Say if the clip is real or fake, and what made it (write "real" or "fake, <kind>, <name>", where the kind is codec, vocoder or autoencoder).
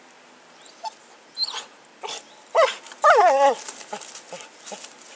real